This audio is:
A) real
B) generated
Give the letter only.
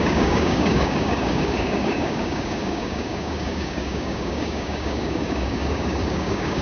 B